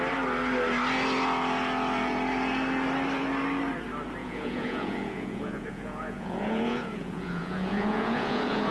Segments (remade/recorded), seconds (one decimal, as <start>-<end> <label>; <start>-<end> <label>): 0.0-4.2 recorded; 4.2-8.7 remade